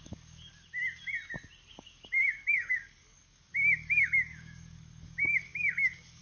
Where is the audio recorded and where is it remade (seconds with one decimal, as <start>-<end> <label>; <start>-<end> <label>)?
0.0-0.5 remade; 0.5-1.7 recorded; 1.7-6.2 remade